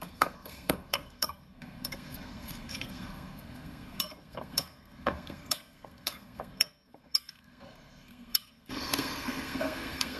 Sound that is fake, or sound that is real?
fake